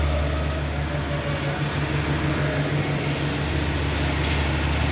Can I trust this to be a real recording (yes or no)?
yes